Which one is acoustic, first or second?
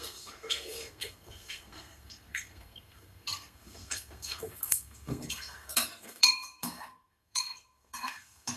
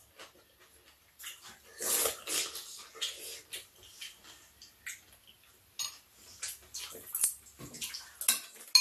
second